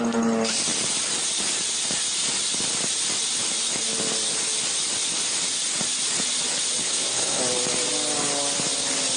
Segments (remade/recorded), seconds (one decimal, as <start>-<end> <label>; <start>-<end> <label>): 0.0-6.8 recorded; 6.8-7.4 remade; 7.4-9.2 recorded